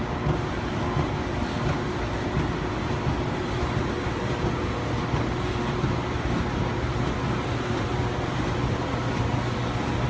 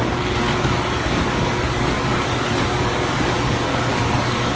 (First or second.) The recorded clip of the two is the first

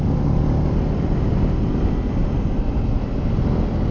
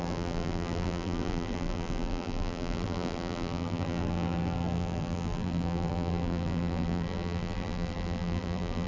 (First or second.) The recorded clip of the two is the first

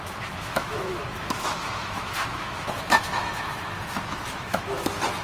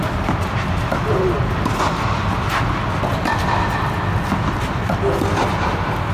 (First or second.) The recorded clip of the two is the second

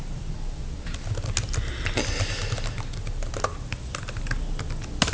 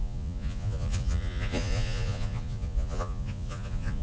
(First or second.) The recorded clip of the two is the first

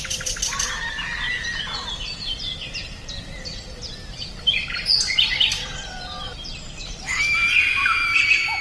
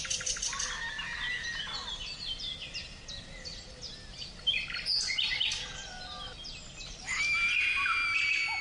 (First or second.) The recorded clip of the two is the second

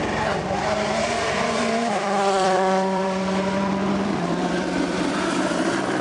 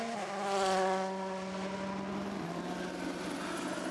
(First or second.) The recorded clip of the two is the second